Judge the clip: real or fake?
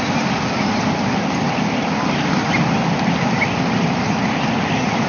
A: real